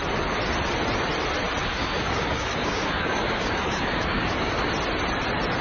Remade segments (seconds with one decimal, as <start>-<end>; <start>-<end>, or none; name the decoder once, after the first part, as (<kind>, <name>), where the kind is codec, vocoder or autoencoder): 1.6-4.7 (codec, DAC)